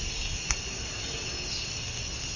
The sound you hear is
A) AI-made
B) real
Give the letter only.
B